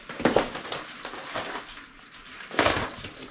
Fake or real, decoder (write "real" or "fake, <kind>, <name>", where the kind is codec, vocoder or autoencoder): real